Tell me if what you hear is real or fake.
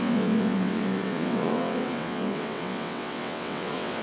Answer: fake